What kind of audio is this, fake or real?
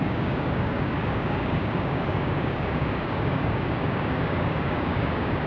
fake